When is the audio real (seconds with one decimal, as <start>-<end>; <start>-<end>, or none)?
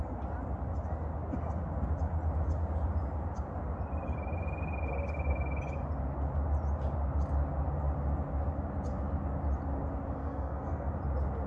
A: 0.0-10.2; 10.9-11.5